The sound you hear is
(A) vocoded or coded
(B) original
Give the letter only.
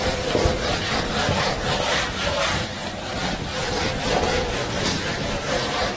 B